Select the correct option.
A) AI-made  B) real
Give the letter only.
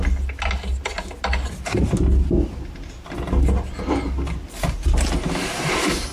B